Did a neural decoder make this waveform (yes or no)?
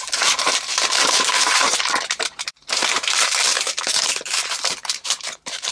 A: yes